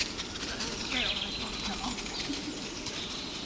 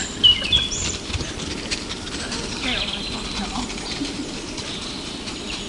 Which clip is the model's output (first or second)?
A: second